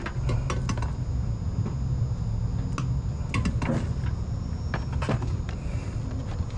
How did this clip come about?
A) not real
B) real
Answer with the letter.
B